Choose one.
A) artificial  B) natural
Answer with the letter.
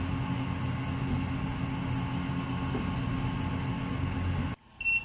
B